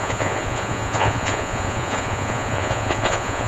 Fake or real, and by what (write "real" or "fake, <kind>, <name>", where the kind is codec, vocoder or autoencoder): fake, vocoder, Vocos